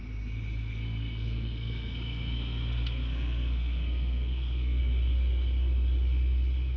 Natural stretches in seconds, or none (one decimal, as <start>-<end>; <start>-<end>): 0.0-0.7; 4.8-6.8

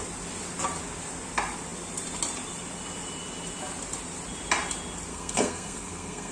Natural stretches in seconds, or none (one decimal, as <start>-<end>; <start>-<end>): 0.0-5.1

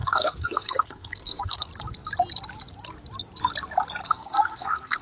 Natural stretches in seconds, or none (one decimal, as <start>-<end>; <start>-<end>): 1.7-4.1

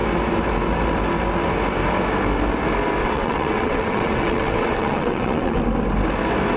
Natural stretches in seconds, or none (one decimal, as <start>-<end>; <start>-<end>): 0.0-3.0; 5.6-6.6

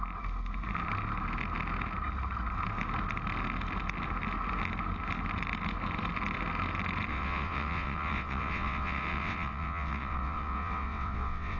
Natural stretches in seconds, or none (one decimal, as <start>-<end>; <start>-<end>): 0.0-7.1

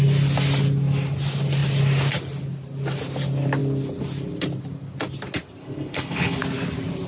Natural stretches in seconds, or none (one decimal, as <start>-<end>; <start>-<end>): 0.0-5.6; 6.4-7.1